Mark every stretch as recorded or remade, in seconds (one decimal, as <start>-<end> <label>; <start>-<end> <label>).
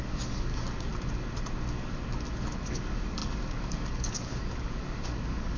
0.0-0.9 remade; 0.9-2.7 recorded; 2.7-5.6 remade